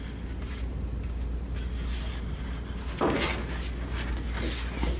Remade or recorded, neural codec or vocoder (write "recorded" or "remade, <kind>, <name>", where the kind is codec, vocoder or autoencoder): recorded